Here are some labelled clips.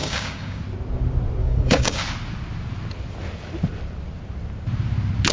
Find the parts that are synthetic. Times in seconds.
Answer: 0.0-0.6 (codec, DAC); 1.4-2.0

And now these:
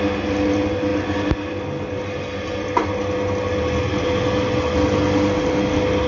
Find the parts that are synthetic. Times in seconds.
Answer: none

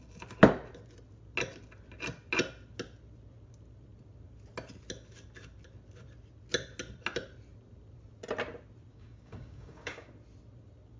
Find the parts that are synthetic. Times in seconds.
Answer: 8.9-10.1 (codec, DAC)